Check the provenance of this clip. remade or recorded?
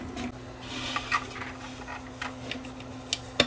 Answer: recorded